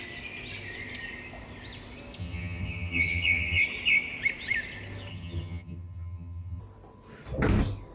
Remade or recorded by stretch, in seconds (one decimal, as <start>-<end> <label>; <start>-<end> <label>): 0.0-2.2 recorded; 2.2-3.6 remade; 3.6-5.1 recorded; 5.1-6.6 remade; 6.6-7.9 recorded